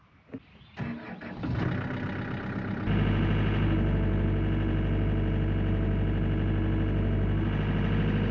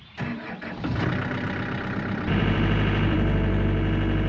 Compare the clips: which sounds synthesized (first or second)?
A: second